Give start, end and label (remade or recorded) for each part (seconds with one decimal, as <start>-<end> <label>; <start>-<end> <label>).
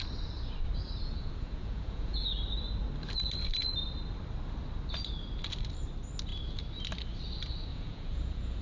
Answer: 0.0-1.0 recorded; 1.0-2.3 remade; 2.3-7.7 recorded; 7.7-8.6 remade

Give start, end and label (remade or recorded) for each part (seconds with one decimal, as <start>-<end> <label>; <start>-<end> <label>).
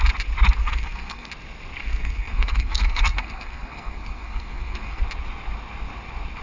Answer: 0.0-0.6 recorded; 0.6-1.3 remade; 1.3-1.8 recorded; 1.8-5.0 remade; 5.0-6.4 recorded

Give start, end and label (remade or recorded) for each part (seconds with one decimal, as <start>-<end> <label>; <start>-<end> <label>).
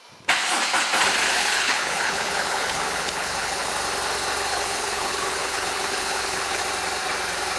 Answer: 0.0-1.4 recorded; 1.4-3.7 remade; 3.7-4.5 recorded; 4.5-6.6 remade; 6.6-7.6 recorded